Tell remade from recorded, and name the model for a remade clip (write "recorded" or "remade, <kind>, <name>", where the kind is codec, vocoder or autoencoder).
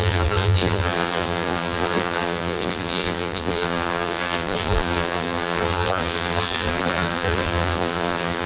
remade, vocoder, BigVGAN v2